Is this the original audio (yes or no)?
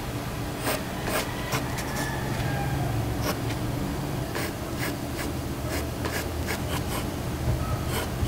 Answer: yes